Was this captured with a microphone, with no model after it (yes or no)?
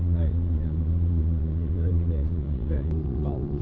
no